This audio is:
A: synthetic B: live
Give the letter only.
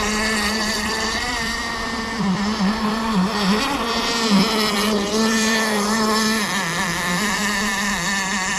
A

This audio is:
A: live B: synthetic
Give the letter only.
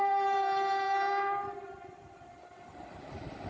B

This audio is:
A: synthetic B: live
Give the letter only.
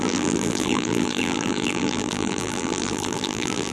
A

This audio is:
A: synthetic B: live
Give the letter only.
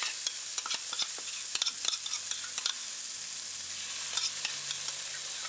B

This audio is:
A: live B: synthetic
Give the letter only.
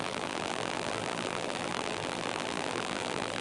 B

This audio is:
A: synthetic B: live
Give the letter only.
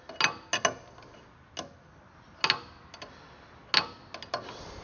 B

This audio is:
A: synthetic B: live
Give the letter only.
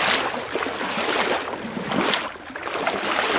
B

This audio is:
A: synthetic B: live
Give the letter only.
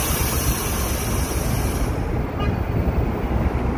B